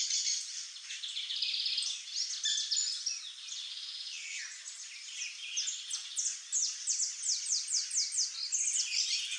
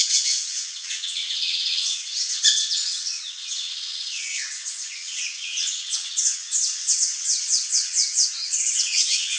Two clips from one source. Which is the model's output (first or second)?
second